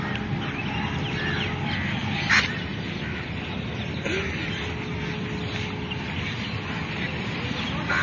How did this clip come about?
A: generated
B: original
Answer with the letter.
B